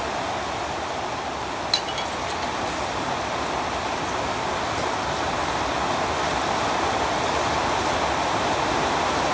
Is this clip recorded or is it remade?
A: recorded